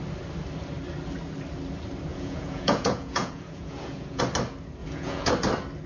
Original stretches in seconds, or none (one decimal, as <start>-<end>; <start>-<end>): 0.0-2.1; 4.2-4.8; 5.3-5.9